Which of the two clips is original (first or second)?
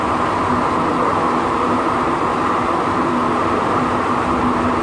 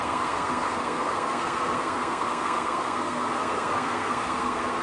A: first